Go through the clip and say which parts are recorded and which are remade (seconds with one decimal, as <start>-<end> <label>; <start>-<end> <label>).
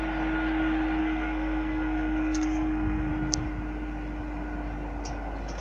0.0-1.0 recorded; 1.0-3.1 remade; 3.1-5.6 recorded